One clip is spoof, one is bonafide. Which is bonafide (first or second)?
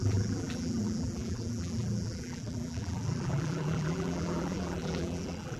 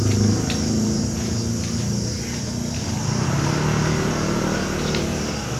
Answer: second